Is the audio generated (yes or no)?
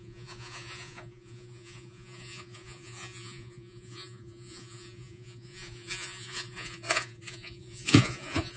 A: yes